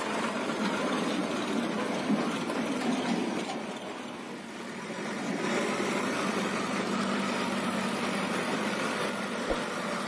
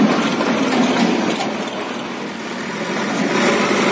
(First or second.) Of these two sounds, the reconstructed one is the first